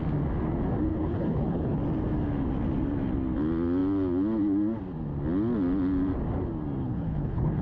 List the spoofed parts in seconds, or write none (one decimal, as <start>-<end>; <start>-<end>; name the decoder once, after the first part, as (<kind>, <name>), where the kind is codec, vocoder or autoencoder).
0.9-1.8 (codec, HILCodec); 6.8-7.6